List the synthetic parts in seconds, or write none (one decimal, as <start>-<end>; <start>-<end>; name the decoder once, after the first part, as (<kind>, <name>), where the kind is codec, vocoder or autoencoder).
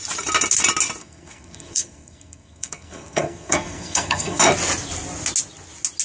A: 1.0-4.4 (codec, SNAC)